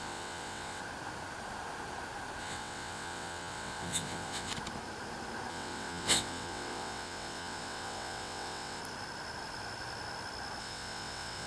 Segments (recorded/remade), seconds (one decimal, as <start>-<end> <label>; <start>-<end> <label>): 0.0-0.8 remade; 0.8-2.4 recorded; 2.4-4.5 remade; 4.5-5.5 recorded; 5.5-8.8 remade; 8.8-10.6 recorded; 10.6-11.5 remade